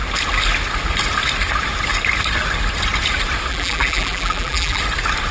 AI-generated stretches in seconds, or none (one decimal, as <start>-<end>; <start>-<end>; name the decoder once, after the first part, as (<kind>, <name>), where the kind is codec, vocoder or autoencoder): 3.5-4.8 (vocoder, BigVGAN v2)